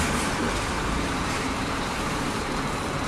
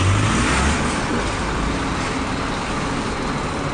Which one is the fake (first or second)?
first